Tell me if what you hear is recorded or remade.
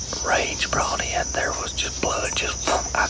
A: recorded